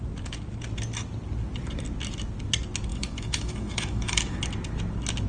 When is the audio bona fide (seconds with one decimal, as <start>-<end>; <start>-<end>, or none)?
0.0-2.9; 4.4-5.3